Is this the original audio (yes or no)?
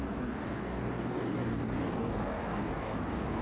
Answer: no